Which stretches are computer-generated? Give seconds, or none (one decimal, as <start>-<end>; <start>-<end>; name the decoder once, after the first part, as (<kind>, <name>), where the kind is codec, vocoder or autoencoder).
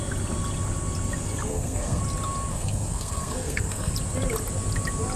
1.5-2.0 (codec, SNAC); 2.5-3.9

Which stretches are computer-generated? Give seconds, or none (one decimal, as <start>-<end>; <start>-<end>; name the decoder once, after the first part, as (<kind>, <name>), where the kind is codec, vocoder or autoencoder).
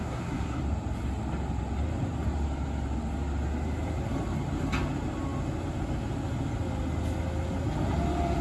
0.0-0.6 (codec, SNAC)